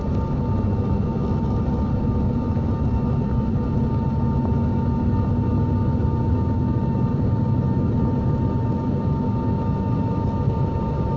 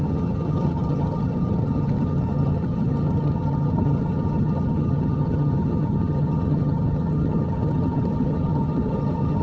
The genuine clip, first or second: first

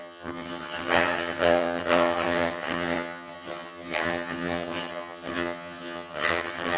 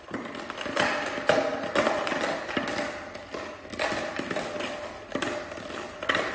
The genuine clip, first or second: second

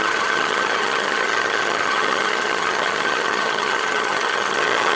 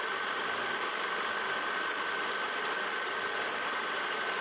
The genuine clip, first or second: second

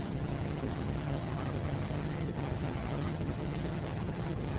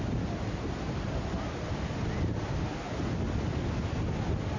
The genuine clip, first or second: second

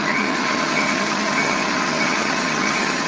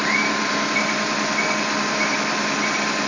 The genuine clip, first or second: second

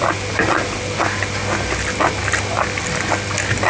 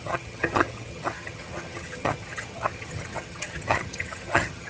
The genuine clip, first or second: first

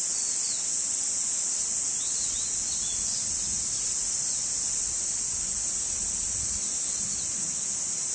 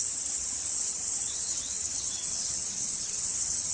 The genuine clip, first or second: first